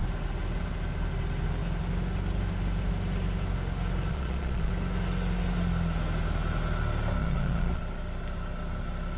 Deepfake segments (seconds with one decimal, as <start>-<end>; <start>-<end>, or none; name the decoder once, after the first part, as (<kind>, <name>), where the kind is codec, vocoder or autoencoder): 4.1-4.7 (vocoder, Vocos); 7.2-7.8